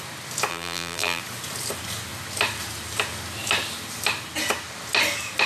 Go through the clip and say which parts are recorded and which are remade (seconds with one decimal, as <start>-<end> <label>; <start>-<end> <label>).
0.0-0.5 recorded; 0.5-1.2 remade; 1.2-5.5 recorded